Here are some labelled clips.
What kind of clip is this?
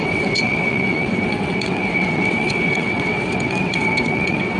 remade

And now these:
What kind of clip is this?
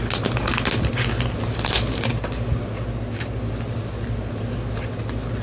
recorded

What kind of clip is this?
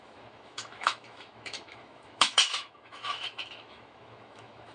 remade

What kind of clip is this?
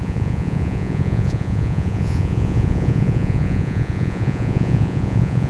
remade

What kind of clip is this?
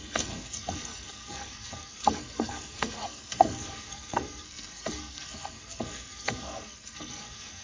remade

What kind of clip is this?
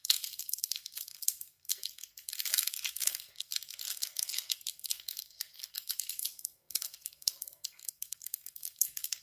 remade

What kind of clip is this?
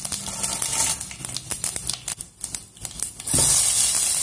recorded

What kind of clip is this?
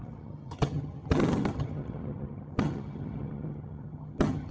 remade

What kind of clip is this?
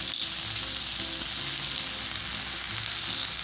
recorded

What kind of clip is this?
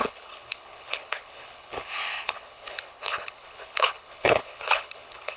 remade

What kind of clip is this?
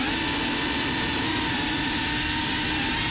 recorded